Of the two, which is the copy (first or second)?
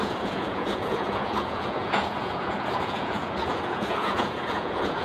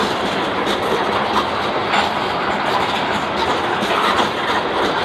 first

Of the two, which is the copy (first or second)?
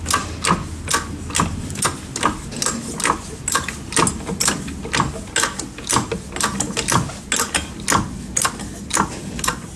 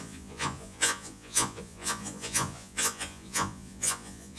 second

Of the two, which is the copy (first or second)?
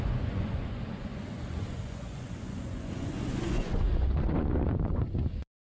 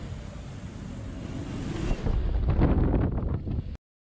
first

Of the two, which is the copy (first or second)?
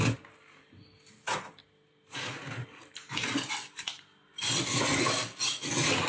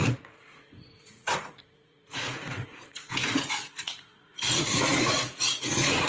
second